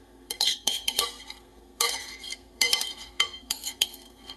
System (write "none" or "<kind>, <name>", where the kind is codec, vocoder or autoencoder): codec, SNAC